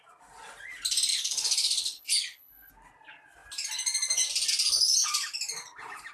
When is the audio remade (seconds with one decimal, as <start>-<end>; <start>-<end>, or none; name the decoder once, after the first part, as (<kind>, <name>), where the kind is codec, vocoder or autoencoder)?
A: 1.1-2.7 (codec, HILCodec)